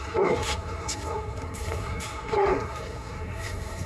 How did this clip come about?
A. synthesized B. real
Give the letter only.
A